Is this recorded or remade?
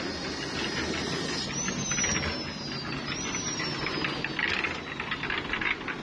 recorded